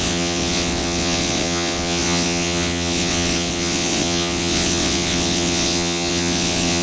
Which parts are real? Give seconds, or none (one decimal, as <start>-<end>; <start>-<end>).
none